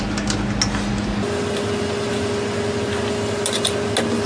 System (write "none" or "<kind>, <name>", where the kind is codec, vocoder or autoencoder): none